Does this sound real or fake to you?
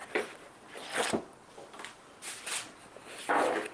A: real